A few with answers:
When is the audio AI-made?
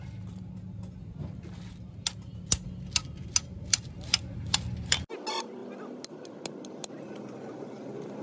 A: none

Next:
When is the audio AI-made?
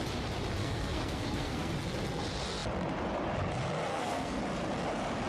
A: 0.6-1.7 (codec, SNAC); 3.9-4.4